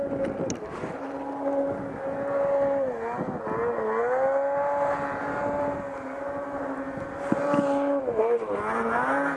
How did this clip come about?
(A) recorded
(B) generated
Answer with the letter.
A